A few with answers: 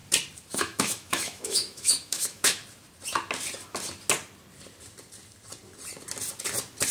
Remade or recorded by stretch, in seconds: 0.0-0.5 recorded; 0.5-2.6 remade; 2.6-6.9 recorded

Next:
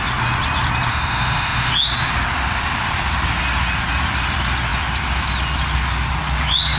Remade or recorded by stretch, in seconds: 0.0-0.9 recorded; 0.9-1.7 remade; 1.7-6.8 recorded

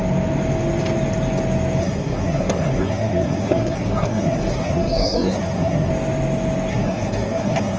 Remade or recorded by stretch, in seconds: 0.0-1.8 recorded; 1.8-5.9 remade; 5.9-6.7 recorded; 6.7-7.8 remade

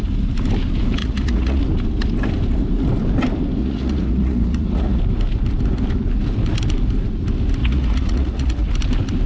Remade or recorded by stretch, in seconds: 0.0-1.0 recorded; 1.0-1.6 remade; 1.6-3.6 recorded; 3.6-5.0 remade; 5.0-7.6 recorded; 7.6-8.7 remade; 8.7-9.3 recorded

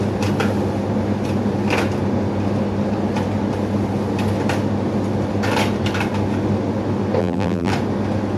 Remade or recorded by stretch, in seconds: 0.0-7.2 recorded; 7.2-7.7 remade; 7.7-8.4 recorded

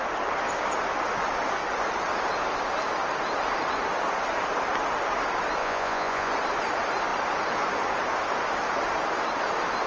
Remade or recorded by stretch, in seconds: 0.0-5.6 recorded; 5.6-6.3 remade; 6.3-9.9 recorded